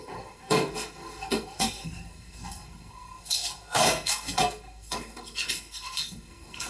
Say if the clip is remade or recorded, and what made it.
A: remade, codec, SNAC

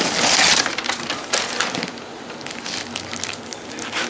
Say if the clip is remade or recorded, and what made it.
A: recorded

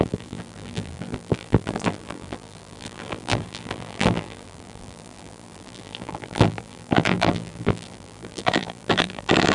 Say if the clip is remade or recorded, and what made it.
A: remade, vocoder, BigVGAN v2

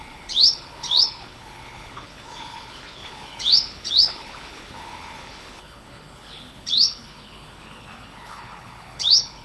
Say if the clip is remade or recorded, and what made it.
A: remade, codec, HILCodec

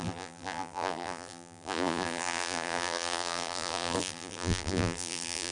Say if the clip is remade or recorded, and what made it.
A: remade, vocoder, BigVGAN v2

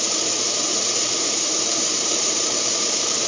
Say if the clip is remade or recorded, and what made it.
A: remade, vocoder, BigVGAN v2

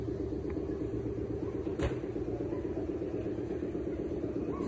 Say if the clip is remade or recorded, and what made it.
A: recorded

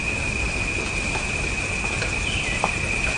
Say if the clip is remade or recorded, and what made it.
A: recorded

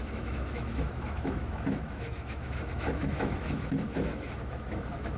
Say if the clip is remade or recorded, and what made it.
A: remade, autoencoder, DAC-VAE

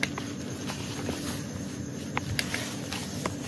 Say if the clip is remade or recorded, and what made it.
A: recorded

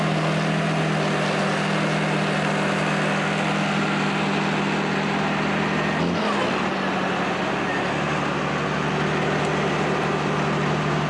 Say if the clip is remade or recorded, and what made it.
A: recorded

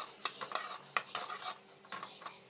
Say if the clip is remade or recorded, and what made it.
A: recorded